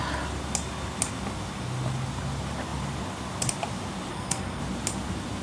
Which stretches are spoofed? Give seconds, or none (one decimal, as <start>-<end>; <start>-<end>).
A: 4.1-4.6